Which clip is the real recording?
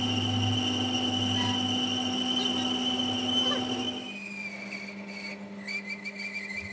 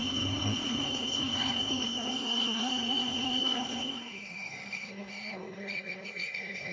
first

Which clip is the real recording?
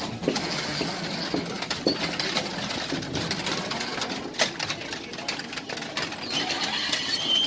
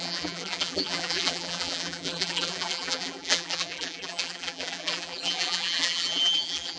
first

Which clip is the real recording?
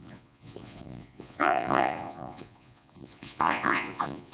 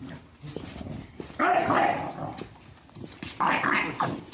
second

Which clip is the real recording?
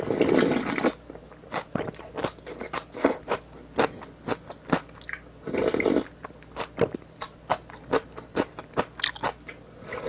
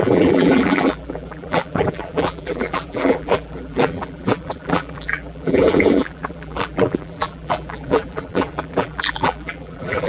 first